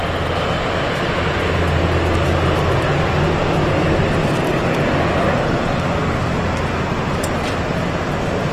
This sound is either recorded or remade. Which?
recorded